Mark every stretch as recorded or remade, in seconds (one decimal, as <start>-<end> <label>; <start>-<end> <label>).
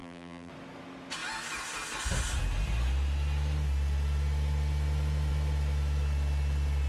0.0-0.5 remade; 0.5-6.9 recorded